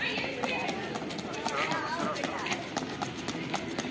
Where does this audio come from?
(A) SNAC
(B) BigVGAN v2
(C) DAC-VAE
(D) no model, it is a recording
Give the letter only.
D